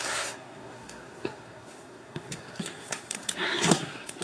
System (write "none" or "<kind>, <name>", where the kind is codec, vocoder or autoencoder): codec, SNAC